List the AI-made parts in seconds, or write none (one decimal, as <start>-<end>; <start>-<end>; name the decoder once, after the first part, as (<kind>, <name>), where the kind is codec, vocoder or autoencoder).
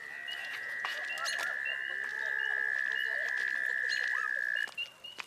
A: 0.4-1.0 (vocoder, Vocos)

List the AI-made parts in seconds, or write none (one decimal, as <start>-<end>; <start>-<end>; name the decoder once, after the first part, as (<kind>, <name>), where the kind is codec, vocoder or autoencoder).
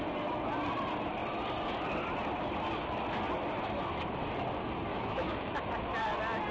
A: 4.9-5.6 (autoencoder, DAC-VAE)